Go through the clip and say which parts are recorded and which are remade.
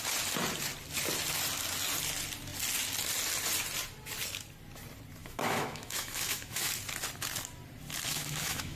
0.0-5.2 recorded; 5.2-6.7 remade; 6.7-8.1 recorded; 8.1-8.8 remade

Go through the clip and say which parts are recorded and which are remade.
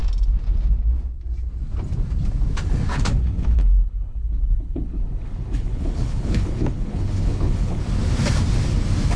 0.0-2.9 recorded; 2.9-7.8 remade; 7.8-9.2 recorded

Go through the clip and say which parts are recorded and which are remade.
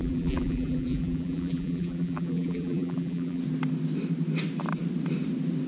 0.0-3.4 remade; 3.4-5.7 recorded